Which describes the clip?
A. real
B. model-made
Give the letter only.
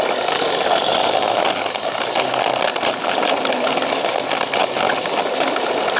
A